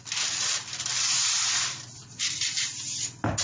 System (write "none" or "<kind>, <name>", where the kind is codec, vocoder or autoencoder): none